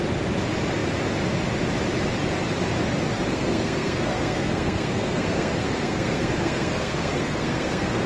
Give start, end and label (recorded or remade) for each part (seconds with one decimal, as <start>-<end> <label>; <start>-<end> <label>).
0.0-3.3 recorded; 3.3-8.1 remade